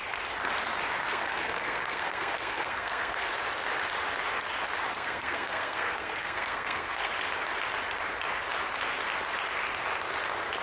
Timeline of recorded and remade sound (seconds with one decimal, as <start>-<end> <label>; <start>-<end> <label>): 0.0-1.1 recorded; 1.1-3.3 remade; 3.3-4.9 recorded; 4.9-7.1 remade; 7.1-10.6 recorded